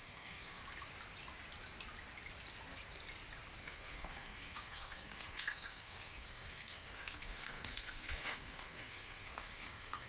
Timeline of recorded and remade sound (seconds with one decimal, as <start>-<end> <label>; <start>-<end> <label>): 0.0-0.6 remade; 0.6-3.6 recorded; 3.6-10.1 remade